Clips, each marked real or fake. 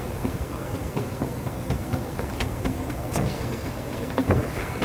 fake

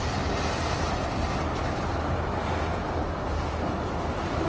real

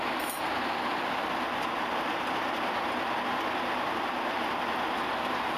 real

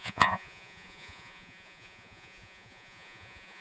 fake